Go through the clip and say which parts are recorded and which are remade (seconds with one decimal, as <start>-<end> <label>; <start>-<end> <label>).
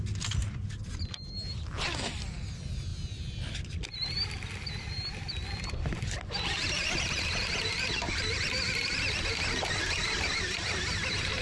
0.0-11.4 recorded